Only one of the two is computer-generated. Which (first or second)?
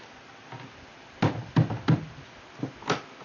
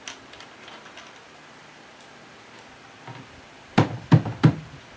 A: second